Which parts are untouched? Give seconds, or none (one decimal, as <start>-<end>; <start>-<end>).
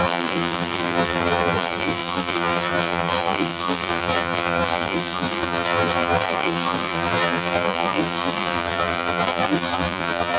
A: none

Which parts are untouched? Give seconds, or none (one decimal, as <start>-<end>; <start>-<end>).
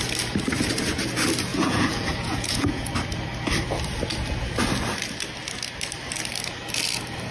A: 0.0-1.5; 2.9-7.3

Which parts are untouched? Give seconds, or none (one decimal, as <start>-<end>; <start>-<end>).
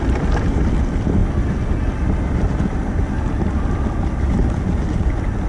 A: 0.0-5.5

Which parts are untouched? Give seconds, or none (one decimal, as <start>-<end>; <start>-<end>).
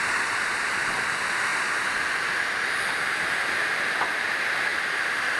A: 0.0-4.7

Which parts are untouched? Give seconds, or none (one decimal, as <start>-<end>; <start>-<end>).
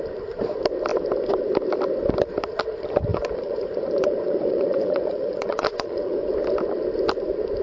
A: 0.0-3.1; 6.2-7.6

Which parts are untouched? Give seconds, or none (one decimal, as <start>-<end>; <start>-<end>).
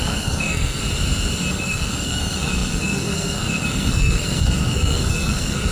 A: 0.8-1.5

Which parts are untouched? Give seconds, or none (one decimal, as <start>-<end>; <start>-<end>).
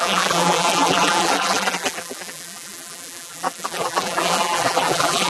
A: none